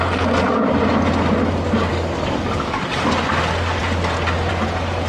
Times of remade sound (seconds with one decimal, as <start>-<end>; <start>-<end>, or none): 1.9-2.9